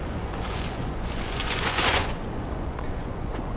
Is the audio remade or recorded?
remade